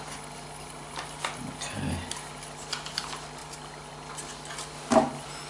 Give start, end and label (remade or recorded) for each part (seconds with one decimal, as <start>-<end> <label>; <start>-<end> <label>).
0.0-5.5 recorded